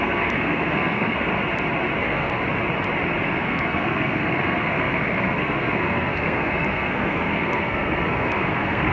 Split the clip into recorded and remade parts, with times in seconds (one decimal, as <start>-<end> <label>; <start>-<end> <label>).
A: 0.0-1.3 remade; 1.3-2.0 recorded; 2.0-2.4 remade; 2.4-3.2 recorded; 3.2-8.9 remade

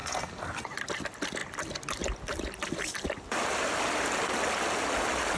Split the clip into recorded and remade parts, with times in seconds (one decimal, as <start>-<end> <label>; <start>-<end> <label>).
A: 0.0-5.4 recorded

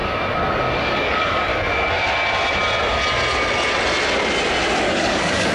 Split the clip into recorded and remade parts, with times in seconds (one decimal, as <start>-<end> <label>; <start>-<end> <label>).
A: 0.0-0.8 recorded; 0.8-1.5 remade; 1.5-4.8 recorded; 4.8-5.5 remade